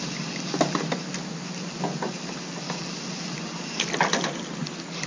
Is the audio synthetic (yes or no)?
no